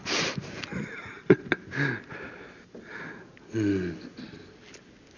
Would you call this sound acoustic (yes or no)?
yes